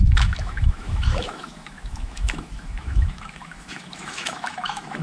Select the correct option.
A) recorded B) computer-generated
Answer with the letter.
B